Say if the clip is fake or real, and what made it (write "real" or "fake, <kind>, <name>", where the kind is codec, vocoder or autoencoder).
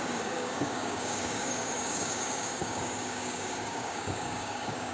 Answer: fake, codec, DAC